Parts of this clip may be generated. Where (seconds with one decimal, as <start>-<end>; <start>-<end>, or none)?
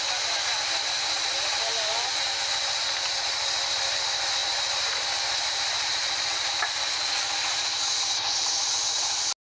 4.4-6.8; 7.9-8.5